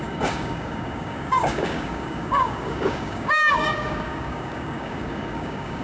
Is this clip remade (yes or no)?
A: yes